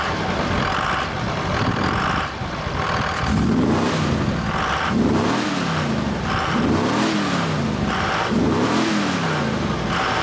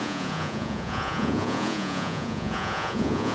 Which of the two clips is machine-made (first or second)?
second